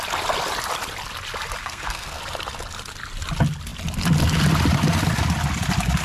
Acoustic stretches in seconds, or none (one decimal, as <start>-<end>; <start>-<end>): 0.0-1.6; 2.2-6.0

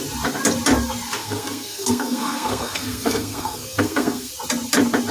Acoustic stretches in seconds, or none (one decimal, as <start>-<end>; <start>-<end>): 0.0-1.2; 4.3-5.1

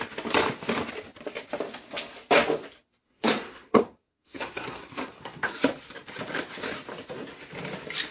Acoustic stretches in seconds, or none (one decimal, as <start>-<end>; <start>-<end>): 0.0-3.0; 5.5-8.1

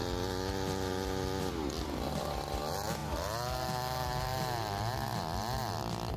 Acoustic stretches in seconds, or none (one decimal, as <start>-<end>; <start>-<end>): 0.0-6.2

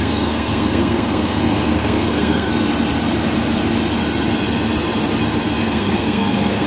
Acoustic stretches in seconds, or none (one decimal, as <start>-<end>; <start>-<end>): 2.5-5.6

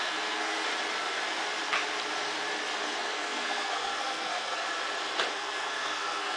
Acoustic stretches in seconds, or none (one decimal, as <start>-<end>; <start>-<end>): 0.7-3.0; 4.6-5.3

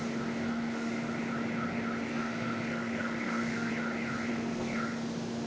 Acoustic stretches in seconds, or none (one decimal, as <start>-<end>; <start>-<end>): 0.0-0.5; 1.1-2.1; 3.7-4.3; 4.8-5.5